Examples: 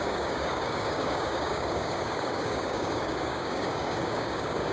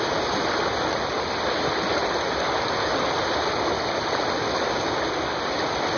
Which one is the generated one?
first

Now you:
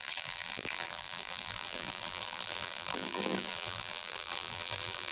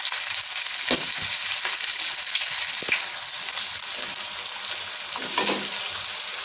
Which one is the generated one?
first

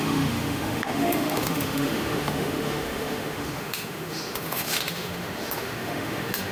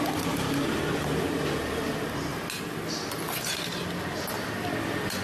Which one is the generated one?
first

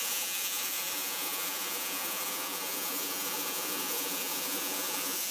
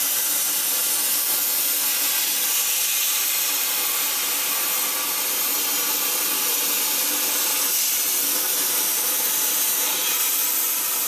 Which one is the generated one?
first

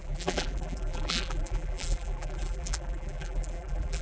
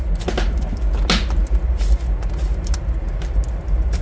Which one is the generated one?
first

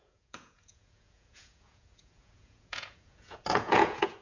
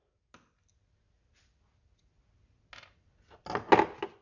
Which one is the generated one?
first